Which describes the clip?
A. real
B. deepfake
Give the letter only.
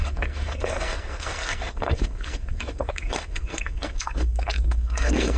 B